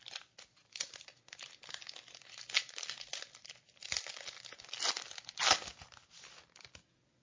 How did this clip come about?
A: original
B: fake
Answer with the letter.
A